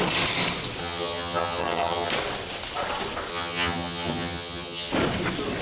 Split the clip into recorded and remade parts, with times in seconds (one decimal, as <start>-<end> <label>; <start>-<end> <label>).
0.0-0.8 recorded; 0.8-2.1 remade; 2.1-3.3 recorded; 3.3-4.9 remade; 4.9-5.6 recorded